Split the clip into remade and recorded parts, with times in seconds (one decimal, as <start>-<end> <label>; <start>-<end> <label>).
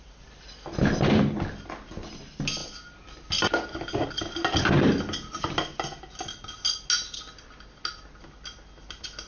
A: 0.0-9.3 recorded